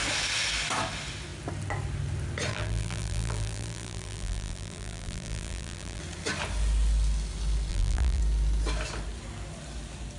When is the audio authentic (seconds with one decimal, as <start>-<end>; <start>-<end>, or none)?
0.0-2.5; 6.0-7.7; 8.2-10.2